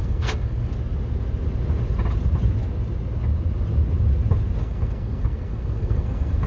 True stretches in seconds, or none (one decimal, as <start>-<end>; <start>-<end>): 0.7-4.6